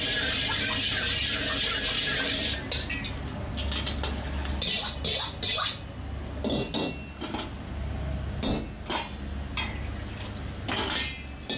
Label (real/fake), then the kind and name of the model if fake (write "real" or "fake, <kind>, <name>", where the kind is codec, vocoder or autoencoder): real